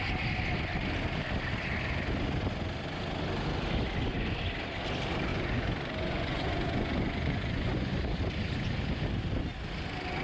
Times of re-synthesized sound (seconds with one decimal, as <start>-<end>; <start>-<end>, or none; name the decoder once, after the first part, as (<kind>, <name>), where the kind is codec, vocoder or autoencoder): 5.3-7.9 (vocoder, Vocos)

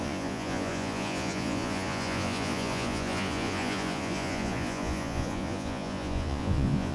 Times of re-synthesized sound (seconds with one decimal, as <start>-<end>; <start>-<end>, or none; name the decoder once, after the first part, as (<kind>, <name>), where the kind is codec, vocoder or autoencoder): 0.0-6.9 (vocoder, Vocos)

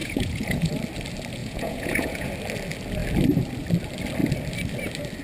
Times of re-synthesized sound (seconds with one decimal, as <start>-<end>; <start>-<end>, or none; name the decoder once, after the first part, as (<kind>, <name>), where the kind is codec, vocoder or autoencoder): 0.0-0.7 (vocoder, Vocos); 1.4-2.3

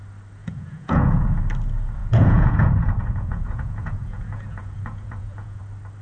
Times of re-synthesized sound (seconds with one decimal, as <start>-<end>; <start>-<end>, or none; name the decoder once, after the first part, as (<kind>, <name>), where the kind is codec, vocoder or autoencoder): 0.4-1.4 (vocoder, Vocos); 2.0-5.6